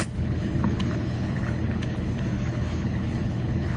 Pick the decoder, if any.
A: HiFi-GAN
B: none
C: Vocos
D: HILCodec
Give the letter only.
D